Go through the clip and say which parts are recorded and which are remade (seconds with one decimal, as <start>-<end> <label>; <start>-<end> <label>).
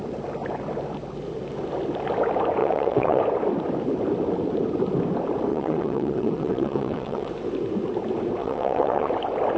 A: 0.0-2.6 recorded; 2.6-3.2 remade; 3.2-5.5 recorded; 5.5-7.3 remade; 7.3-8.4 recorded; 8.4-9.1 remade; 9.1-9.6 recorded